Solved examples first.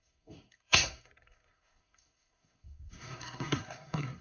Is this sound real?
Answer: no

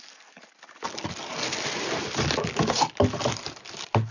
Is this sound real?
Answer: yes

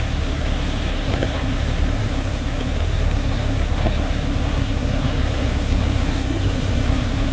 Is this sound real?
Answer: no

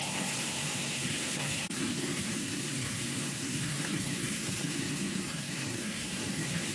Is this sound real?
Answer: no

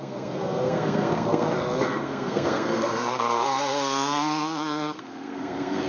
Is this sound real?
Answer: no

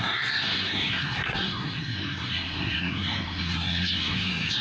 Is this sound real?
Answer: no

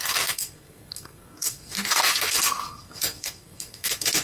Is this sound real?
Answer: no